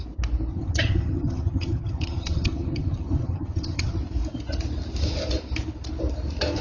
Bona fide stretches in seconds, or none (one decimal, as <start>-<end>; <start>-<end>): 0.0-0.5; 4.0-6.6